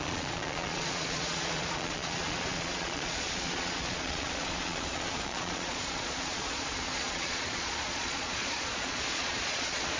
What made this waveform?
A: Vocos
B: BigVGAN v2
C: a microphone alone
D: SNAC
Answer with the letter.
A